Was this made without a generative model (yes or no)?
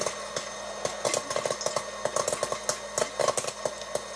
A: yes